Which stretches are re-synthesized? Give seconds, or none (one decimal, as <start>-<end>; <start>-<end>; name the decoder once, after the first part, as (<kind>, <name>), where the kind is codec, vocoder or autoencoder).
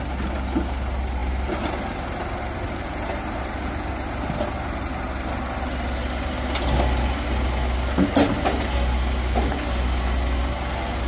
none